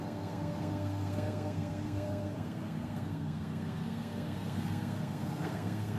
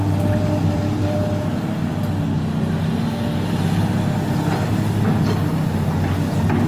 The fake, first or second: first